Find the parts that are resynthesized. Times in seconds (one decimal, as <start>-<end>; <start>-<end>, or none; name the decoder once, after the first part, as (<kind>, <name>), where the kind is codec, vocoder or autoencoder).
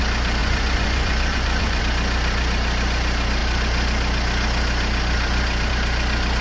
0.4-1.8 (vocoder, Vocos)